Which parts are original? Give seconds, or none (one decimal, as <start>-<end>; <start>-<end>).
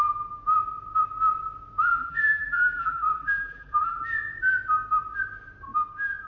0.0-1.9; 4.0-6.3